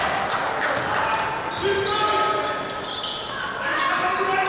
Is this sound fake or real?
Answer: real